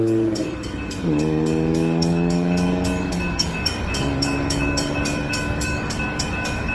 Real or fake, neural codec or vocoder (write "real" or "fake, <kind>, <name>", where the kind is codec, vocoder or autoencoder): fake, codec, DAC